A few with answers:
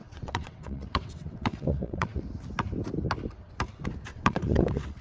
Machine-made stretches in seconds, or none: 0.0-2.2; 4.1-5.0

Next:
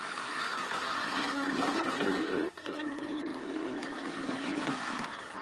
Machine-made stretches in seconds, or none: 0.0-5.4

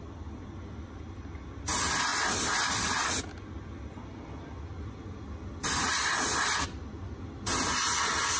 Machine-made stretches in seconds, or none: 2.1-2.8; 5.9-6.5

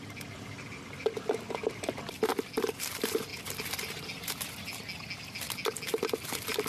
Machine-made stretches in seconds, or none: 3.3-4.5

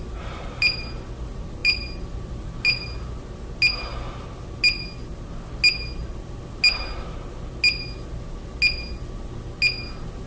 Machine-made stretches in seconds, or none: none

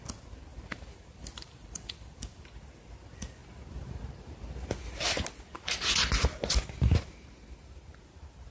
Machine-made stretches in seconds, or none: 0.5-2.4